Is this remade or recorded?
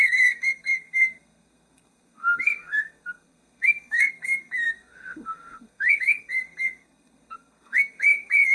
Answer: remade